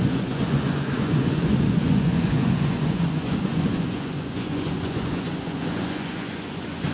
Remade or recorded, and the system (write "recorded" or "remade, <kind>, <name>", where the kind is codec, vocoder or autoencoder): remade, vocoder, Vocos